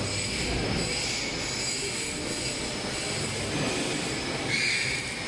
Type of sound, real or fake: real